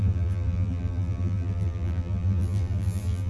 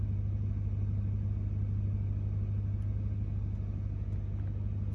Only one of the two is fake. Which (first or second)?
first